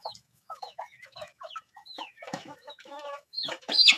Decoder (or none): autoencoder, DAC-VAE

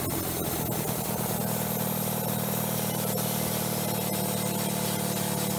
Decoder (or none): none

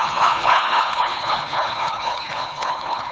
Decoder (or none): codec, HILCodec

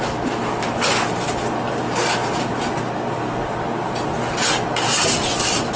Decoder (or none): none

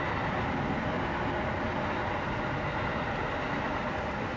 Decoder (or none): none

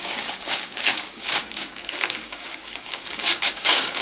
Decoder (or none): codec, DAC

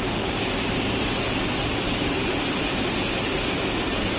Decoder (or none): none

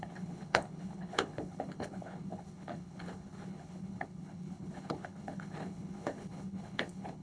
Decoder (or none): codec, HILCodec